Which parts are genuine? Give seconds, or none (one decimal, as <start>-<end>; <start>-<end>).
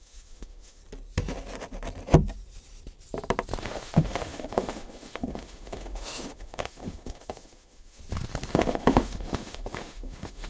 0.8-3.6; 8.0-8.5